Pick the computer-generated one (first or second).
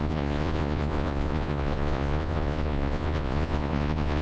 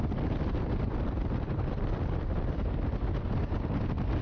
first